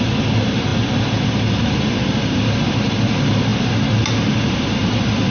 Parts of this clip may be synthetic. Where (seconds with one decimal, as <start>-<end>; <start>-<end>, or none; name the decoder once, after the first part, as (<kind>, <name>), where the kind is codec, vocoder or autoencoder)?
none